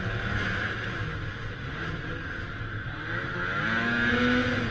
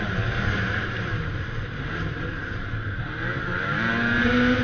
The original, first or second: first